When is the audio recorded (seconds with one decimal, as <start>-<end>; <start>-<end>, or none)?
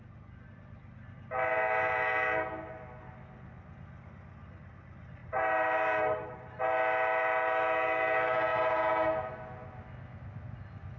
0.0-5.2; 6.6-11.0